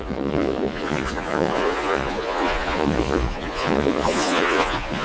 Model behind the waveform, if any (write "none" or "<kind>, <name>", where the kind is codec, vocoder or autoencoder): vocoder, Vocos